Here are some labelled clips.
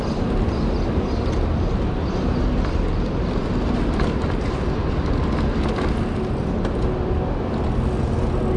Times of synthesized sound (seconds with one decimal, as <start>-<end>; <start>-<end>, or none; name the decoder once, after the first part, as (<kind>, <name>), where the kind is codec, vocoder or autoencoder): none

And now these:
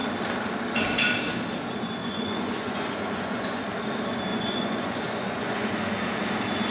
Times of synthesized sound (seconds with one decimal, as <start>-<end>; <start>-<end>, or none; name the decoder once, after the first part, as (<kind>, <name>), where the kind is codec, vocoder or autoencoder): 2.0-3.6 (vocoder, Vocos); 4.3-5.8

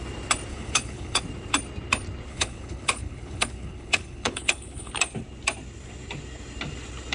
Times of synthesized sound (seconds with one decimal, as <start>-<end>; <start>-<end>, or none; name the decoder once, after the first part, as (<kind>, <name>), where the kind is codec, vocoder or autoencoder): 0.5-1.2 (codec, HILCodec); 2.3-4.9